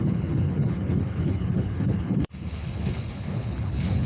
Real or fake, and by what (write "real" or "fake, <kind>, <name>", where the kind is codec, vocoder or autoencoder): fake, codec, HILCodec